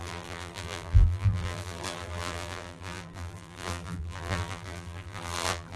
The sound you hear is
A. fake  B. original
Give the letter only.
A